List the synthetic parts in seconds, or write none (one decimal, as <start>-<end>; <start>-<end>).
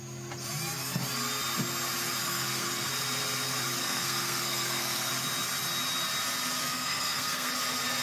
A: 2.2-2.9; 3.8-5.1; 6.6-7.5